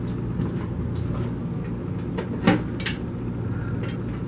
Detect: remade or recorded recorded